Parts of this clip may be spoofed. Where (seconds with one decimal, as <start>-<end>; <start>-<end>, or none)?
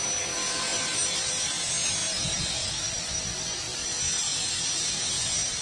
none